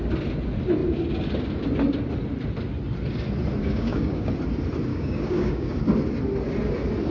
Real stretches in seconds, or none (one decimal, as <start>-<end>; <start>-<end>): 0.0-3.6; 4.3-4.9; 5.8-7.1

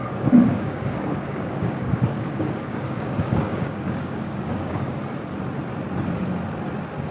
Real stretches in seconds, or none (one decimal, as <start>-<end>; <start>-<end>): 5.0-7.1

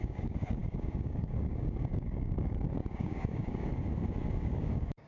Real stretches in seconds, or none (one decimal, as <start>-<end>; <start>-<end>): 3.7-4.2

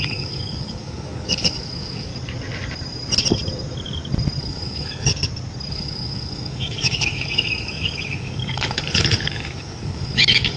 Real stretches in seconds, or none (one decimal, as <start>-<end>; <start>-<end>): 2.1-4.4; 5.1-5.7

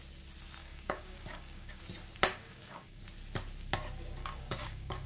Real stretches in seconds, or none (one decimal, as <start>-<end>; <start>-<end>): 0.0-0.6; 1.8-2.3; 3.0-4.2

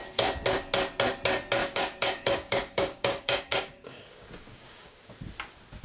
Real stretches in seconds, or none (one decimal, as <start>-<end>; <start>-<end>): 0.0-1.6; 5.1-5.8

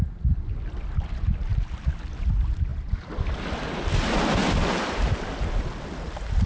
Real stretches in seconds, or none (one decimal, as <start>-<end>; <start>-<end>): 0.0-6.5